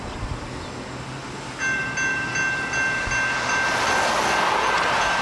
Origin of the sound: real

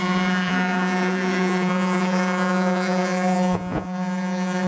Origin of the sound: fake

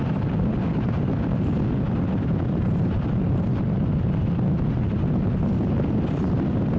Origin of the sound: real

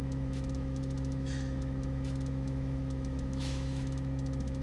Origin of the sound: fake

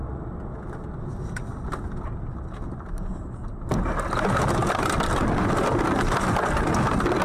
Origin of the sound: real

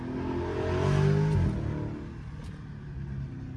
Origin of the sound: real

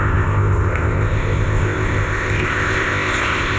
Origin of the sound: fake